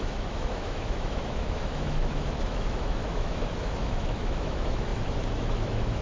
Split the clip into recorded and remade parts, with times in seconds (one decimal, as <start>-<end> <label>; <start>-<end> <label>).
0.0-6.0 remade